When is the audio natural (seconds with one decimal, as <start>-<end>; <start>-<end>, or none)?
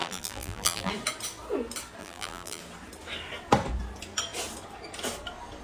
0.9-2.0; 2.6-5.6